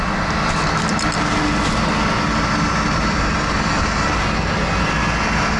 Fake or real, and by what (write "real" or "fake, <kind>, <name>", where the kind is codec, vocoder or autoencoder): real